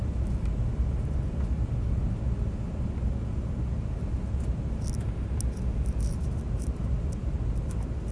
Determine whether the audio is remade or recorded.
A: recorded